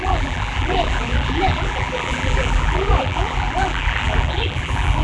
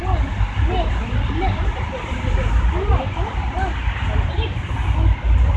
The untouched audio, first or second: second